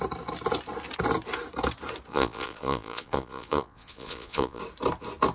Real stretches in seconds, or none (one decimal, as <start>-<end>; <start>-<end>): 0.0-2.1; 4.6-5.3